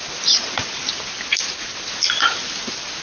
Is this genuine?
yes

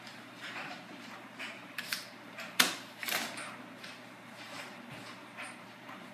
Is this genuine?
no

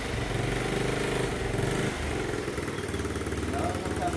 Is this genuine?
yes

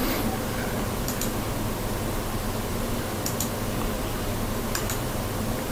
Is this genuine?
no